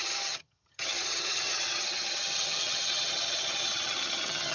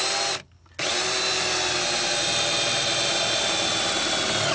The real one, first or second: second